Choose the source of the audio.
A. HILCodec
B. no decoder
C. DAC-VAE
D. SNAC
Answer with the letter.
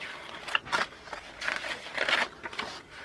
B